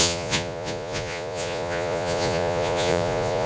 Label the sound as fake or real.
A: fake